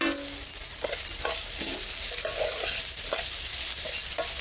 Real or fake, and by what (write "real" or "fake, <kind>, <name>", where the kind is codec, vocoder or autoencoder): real